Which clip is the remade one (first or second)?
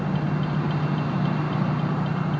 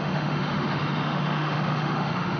second